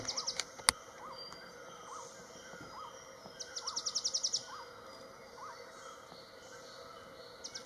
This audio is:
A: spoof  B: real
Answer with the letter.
B